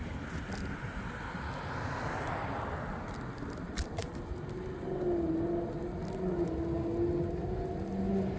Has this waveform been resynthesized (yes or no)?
no